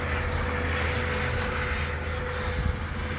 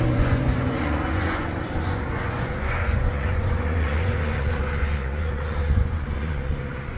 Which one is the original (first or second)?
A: first